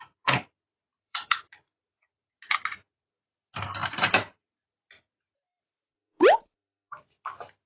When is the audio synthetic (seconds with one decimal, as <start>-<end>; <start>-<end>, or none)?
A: 0.9-1.9; 3.8-4.7; 5.5-7.0